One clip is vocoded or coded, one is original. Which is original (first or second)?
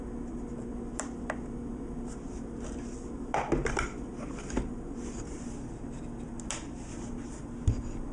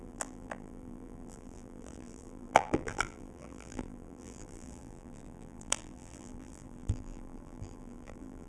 first